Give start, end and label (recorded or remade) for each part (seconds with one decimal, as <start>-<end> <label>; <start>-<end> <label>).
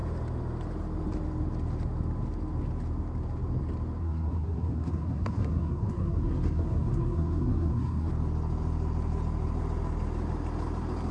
0.0-4.0 recorded; 4.0-8.1 remade; 8.1-11.1 recorded